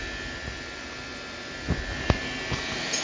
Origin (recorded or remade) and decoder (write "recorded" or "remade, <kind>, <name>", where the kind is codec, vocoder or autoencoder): recorded